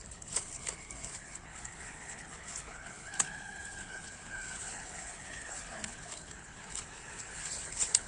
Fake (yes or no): yes